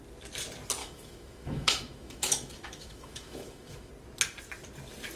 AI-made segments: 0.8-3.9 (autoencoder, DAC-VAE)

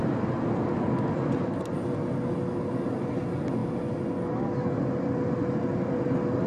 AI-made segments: none

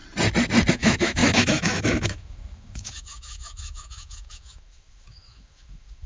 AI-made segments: 0.7-6.1 (autoencoder, DAC-VAE)